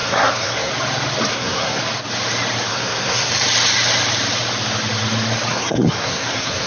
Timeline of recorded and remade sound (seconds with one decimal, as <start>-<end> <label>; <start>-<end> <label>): 0.0-0.7 remade; 0.7-1.3 recorded; 1.3-1.8 remade; 1.8-2.7 recorded; 2.7-3.3 remade; 3.3-5.5 recorded; 5.5-6.7 remade